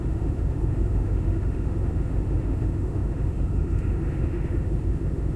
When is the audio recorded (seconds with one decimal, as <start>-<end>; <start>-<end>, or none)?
none